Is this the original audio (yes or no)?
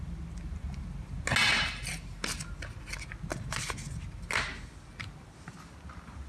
yes